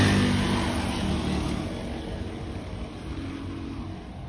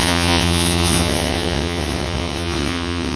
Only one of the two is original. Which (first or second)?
first